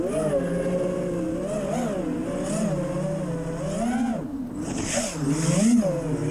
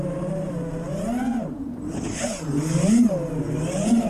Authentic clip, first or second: first